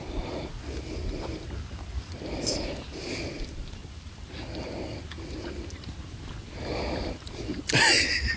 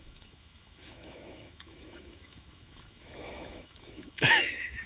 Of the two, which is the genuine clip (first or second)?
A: first